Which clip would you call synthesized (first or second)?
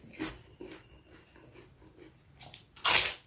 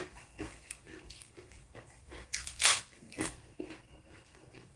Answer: second